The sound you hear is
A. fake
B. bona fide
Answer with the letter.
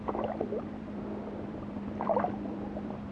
A